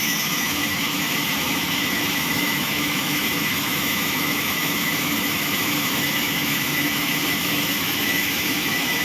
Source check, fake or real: fake